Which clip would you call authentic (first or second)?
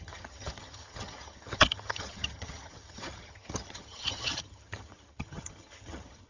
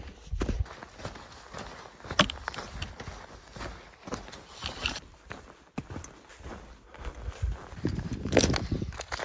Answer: second